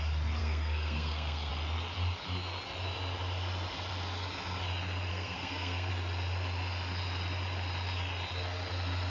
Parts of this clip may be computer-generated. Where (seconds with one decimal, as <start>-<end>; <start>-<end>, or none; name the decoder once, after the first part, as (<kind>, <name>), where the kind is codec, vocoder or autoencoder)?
0.4-1.5 (codec, SNAC); 5.1-5.9